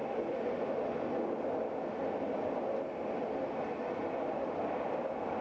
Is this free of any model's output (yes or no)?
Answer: yes